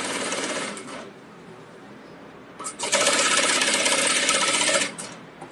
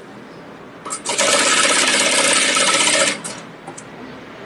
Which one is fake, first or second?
first